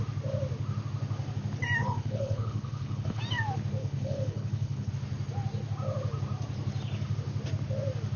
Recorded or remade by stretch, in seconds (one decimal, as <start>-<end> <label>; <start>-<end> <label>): 0.0-1.8 recorded; 1.8-3.2 remade; 3.2-3.8 recorded; 3.8-4.9 remade; 4.9-8.2 recorded